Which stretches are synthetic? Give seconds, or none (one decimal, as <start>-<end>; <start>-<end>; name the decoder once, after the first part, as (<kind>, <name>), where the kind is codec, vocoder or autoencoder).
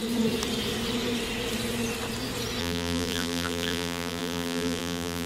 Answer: 2.6-5.3 (vocoder, BigVGAN v2)